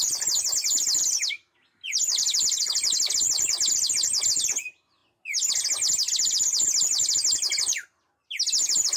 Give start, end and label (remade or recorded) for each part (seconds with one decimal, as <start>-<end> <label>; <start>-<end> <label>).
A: 0.0-9.0 recorded